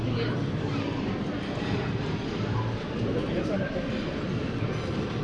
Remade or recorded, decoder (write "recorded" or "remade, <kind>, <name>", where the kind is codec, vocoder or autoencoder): recorded